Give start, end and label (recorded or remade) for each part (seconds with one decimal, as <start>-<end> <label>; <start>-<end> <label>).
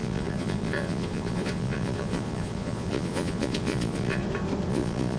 0.0-4.2 remade; 4.2-4.7 recorded; 4.7-5.2 remade